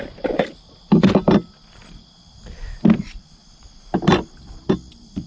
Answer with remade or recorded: recorded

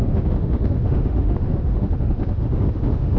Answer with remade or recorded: remade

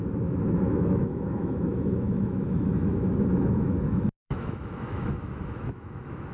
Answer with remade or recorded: remade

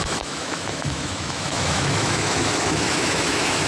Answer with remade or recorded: remade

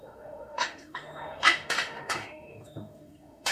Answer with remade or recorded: remade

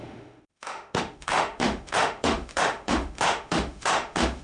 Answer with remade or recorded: remade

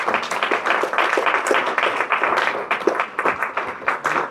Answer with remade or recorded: recorded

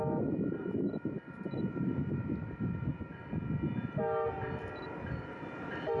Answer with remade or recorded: recorded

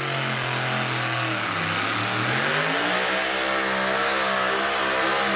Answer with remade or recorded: recorded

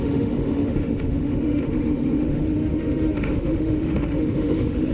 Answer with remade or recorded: remade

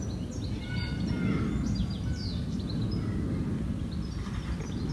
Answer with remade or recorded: recorded